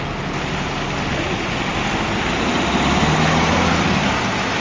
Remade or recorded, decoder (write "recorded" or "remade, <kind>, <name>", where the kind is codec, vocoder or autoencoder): recorded